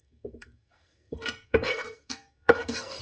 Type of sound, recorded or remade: remade